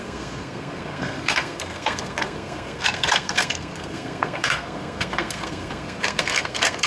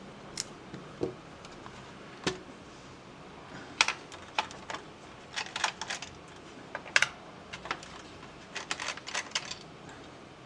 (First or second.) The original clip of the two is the second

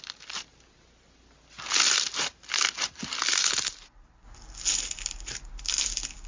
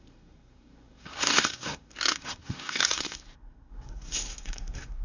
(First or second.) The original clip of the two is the first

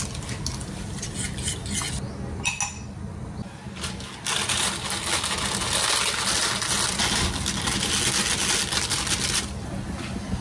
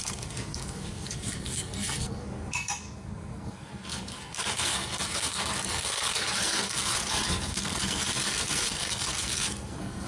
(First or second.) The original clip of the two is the first